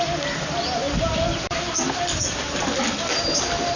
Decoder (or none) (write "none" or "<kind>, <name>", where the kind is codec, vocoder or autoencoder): none